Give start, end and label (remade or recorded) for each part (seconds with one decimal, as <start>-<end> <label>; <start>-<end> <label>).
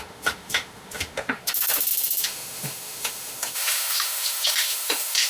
0.0-5.3 remade